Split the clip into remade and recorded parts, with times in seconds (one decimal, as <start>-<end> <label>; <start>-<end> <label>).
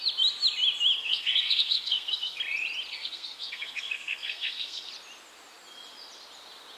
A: 0.0-1.0 recorded; 1.0-2.4 remade; 2.4-2.9 recorded; 2.9-4.9 remade; 4.9-6.8 recorded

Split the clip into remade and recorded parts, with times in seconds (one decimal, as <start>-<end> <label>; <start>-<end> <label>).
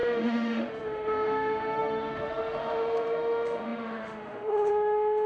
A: 0.0-5.3 remade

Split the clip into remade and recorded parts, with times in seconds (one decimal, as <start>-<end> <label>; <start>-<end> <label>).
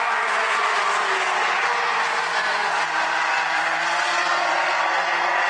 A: 0.0-0.7 remade; 0.7-1.9 recorded; 1.9-5.5 remade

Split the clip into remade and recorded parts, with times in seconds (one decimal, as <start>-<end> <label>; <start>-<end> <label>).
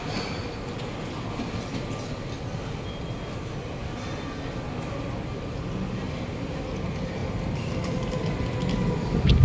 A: 0.0-9.4 recorded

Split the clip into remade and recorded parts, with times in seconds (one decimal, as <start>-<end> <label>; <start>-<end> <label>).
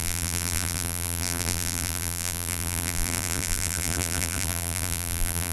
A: 0.0-5.5 remade